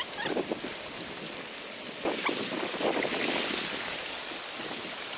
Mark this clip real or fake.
real